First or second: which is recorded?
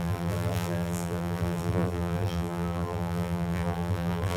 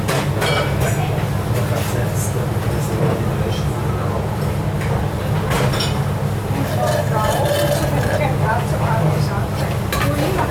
second